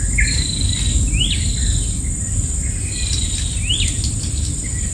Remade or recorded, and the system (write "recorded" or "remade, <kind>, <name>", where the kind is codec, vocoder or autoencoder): recorded